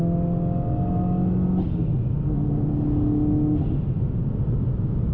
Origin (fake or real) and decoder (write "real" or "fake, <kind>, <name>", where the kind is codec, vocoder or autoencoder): real